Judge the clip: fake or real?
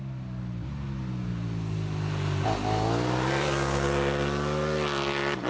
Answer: real